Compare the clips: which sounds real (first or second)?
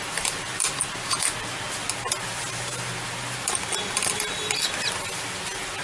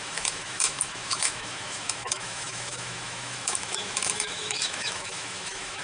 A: first